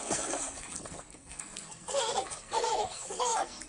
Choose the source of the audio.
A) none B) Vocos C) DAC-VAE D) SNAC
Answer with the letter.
D